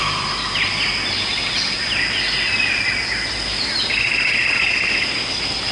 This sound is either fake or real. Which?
real